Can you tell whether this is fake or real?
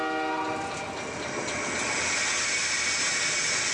real